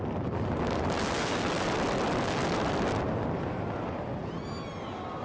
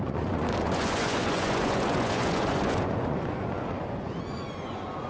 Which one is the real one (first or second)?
first